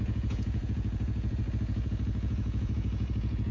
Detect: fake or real fake